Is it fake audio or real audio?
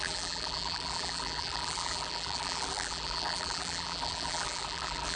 fake